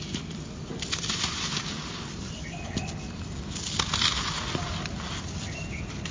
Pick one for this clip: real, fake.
real